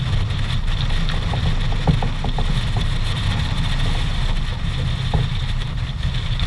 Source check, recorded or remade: recorded